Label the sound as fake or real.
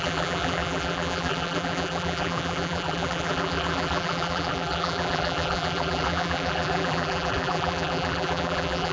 fake